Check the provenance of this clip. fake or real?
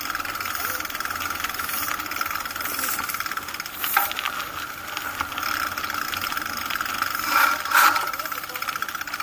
real